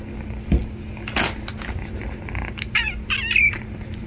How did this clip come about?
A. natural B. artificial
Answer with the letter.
A